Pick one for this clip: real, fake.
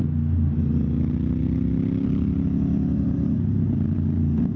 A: real